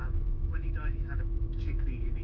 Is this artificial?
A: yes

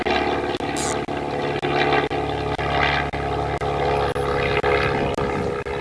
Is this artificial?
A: no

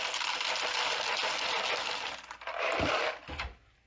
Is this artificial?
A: no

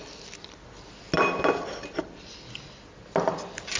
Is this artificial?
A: no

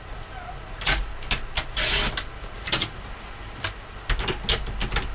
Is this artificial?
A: no